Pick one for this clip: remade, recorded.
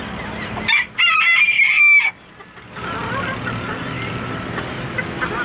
recorded